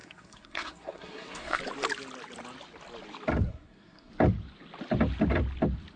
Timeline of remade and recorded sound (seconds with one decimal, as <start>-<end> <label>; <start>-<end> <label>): 0.0-1.6 remade; 1.6-3.5 recorded; 3.5-4.1 remade; 4.1-6.0 recorded